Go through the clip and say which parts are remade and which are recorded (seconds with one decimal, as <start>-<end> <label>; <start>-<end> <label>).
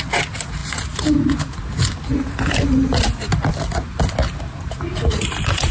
0.0-5.7 recorded